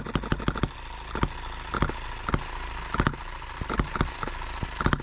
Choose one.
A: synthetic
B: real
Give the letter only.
B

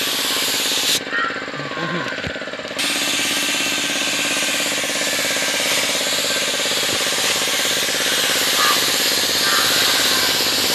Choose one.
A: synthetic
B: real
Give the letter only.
B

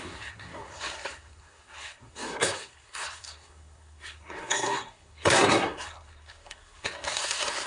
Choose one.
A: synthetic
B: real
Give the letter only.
A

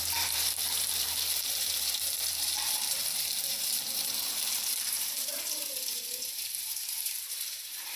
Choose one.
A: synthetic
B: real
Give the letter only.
A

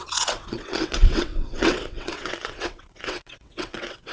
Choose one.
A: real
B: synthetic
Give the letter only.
B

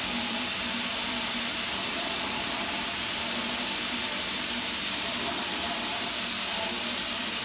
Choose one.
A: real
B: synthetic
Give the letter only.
B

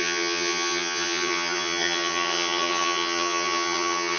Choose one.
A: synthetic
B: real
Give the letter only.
A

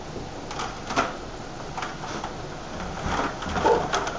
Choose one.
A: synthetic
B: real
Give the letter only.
B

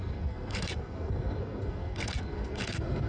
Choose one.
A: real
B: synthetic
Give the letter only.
B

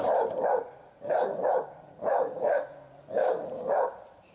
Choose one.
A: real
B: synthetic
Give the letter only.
B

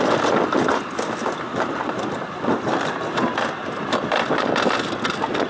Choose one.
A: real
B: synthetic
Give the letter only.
A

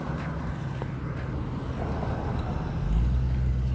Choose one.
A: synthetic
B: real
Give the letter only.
B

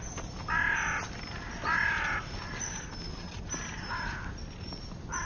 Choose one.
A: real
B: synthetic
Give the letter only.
A